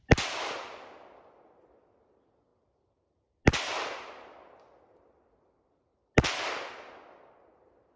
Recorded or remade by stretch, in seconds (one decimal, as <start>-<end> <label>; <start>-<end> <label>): 0.0-8.0 recorded